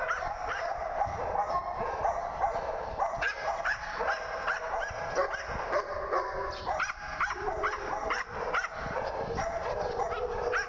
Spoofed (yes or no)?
no